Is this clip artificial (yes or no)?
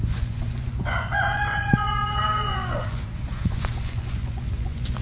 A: yes